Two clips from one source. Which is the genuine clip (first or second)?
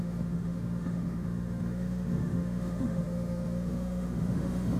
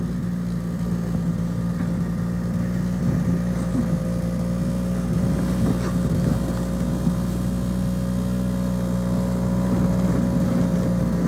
second